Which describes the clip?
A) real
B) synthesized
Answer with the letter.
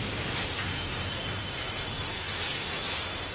A